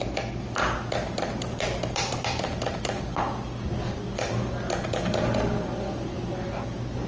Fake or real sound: real